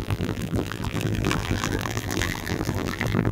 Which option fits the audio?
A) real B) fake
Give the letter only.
B